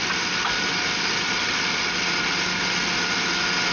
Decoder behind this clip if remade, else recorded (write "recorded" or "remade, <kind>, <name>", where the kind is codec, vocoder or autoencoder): recorded